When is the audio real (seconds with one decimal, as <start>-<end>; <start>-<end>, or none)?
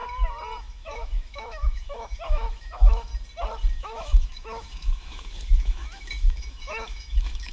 0.0-0.6; 3.1-3.7